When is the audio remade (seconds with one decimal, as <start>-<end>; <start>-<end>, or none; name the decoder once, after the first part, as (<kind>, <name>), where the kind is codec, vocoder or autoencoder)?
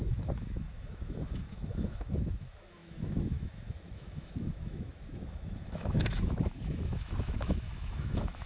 0.0-8.5 (autoencoder, DAC-VAE)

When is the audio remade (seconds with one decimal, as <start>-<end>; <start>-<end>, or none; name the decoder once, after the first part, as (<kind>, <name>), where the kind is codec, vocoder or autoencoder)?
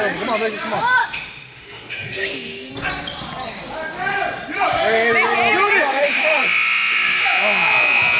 1.0-2.7 (autoencoder, DAC-VAE); 5.9-7.2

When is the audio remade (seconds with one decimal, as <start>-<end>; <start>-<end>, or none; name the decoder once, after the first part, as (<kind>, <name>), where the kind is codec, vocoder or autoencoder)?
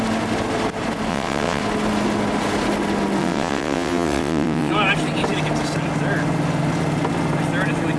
1.1-1.6 (vocoder, WaveNeXt); 3.2-4.7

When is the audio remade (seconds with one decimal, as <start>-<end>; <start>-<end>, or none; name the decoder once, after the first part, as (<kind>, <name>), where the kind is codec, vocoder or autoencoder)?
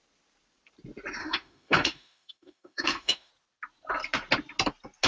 1.2-3.3 (autoencoder, DAC-VAE)